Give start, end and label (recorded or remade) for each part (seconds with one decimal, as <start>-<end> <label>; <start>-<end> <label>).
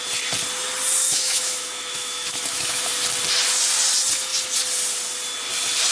0.0-1.1 recorded; 1.1-2.9 remade; 2.9-5.9 recorded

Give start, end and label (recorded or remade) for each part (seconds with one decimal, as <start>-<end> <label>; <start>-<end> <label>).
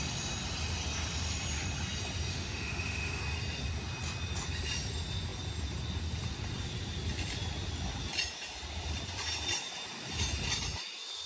0.0-2.3 recorded; 2.3-3.2 remade; 3.2-11.3 recorded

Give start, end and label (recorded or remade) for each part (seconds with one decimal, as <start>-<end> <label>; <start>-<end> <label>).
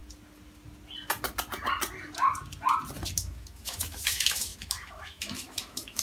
0.0-3.1 recorded; 3.1-6.0 remade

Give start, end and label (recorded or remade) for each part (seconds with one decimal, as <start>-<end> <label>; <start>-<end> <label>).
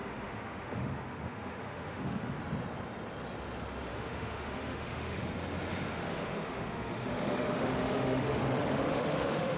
0.0-2.4 remade; 2.4-3.9 recorded; 3.9-5.2 remade; 5.2-5.9 recorded; 5.9-9.6 remade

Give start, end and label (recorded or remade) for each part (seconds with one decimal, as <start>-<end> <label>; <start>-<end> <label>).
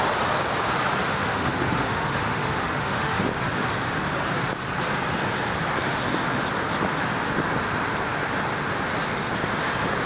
0.0-1.0 recorded; 1.0-3.2 remade; 3.2-10.1 recorded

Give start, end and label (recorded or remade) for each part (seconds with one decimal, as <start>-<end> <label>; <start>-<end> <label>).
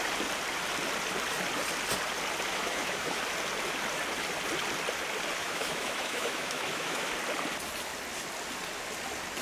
0.0-2.5 recorded; 2.5-3.2 remade; 3.2-5.4 recorded; 5.4-7.1 remade; 7.1-9.4 recorded